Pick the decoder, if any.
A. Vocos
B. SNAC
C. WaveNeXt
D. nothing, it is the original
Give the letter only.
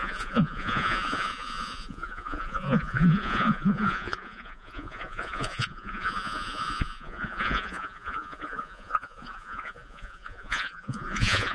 A